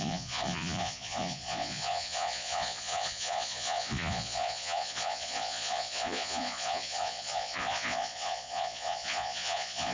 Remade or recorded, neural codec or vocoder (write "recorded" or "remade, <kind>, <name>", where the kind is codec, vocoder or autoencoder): remade, vocoder, Vocos